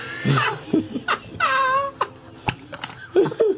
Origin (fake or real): real